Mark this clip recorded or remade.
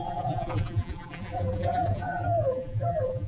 remade